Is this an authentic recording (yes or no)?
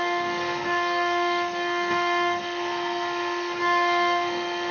no